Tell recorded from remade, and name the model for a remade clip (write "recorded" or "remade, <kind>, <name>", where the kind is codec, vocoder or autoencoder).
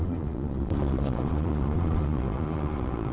remade, vocoder, Vocos